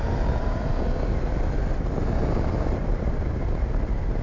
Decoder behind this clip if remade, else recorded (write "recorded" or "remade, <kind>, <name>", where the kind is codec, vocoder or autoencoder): recorded